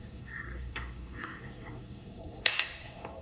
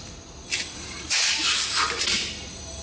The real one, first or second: second